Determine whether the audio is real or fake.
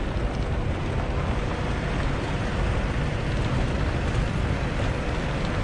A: real